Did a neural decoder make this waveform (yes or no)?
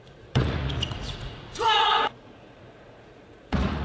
yes